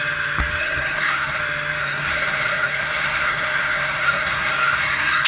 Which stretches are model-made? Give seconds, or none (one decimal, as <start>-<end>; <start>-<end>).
0.6-1.4; 1.8-5.3